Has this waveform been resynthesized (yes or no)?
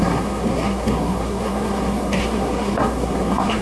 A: yes